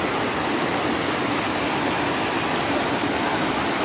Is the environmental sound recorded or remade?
recorded